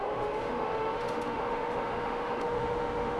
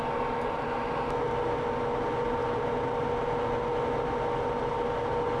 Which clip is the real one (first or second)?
second